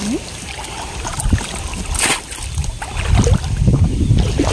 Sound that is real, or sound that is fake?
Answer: real